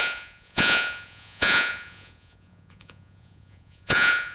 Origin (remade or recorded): remade